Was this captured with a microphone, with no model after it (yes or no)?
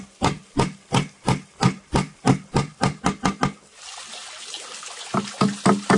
yes